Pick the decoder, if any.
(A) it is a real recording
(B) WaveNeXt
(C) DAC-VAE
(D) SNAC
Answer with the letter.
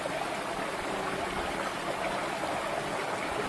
A